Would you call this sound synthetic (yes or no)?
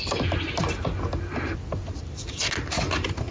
no